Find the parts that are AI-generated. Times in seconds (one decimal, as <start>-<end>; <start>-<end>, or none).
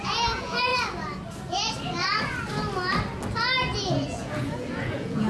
0.0-0.7; 3.9-5.3